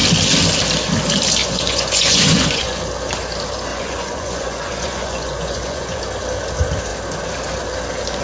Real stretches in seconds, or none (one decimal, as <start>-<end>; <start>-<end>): 0.0-1.4; 2.8-3.7; 6.0-8.2